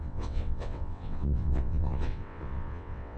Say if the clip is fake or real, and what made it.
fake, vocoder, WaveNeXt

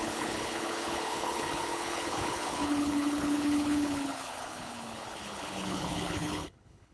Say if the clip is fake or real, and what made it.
fake, codec, HILCodec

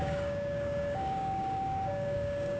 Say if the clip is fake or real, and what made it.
fake, codec, DAC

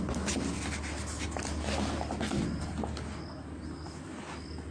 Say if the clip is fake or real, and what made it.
real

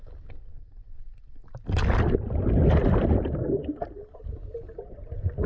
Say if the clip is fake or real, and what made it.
real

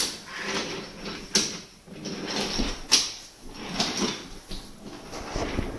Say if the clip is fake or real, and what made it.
real